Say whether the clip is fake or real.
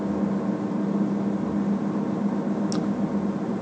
real